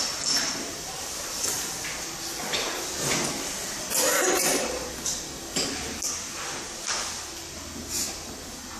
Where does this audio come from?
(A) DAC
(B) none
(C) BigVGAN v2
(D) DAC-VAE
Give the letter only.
B